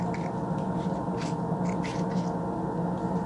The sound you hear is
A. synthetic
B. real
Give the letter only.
B